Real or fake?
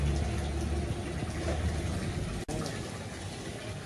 real